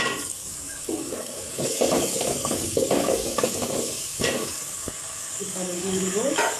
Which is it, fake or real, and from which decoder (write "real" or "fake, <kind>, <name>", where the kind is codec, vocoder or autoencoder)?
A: fake, codec, DAC